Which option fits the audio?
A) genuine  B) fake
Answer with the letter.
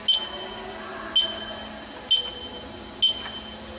A